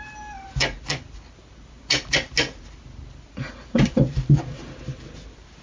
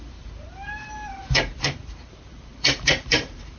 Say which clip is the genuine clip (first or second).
first